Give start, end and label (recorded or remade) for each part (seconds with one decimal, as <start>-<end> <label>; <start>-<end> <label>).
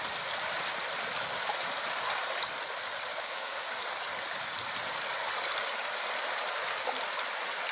0.0-3.1 recorded; 3.1-3.7 remade; 3.7-7.7 recorded